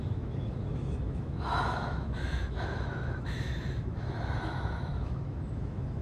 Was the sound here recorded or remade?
remade